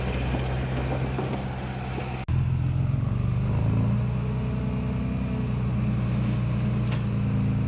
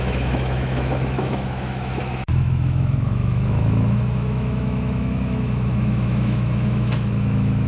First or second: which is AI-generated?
second